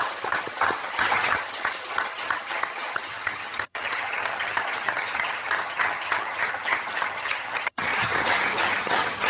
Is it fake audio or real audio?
fake